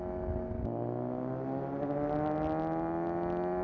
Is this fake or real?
real